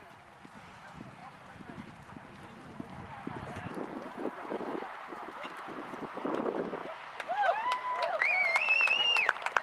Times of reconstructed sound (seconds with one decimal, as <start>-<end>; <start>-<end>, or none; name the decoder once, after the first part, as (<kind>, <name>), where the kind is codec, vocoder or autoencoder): 1.2-6.0 (vocoder, BigVGAN v2); 6.8-8.2

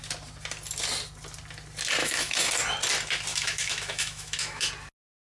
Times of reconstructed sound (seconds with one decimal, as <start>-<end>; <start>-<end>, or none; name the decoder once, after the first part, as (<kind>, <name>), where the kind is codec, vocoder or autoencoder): 2.0-2.5 (autoencoder, DAC-VAE); 3.3-4.7

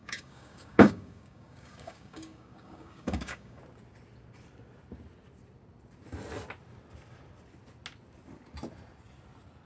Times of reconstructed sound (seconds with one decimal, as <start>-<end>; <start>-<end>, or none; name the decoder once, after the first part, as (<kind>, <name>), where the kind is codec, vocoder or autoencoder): 0.0-3.6 (codec, DAC)

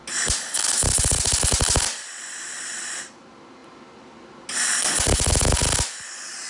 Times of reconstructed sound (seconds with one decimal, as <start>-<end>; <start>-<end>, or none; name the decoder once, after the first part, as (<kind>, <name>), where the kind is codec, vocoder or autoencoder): none

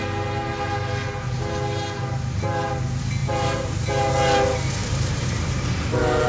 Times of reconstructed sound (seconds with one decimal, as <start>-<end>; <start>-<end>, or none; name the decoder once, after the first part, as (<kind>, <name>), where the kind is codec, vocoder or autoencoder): 3.2-3.9 (vocoder, BigVGAN v2); 4.8-6.3

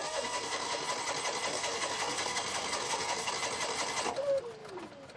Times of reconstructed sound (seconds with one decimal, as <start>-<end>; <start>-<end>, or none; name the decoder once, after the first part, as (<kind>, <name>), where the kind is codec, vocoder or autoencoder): 0.0-0.9 (codec, SNAC); 1.5-3.3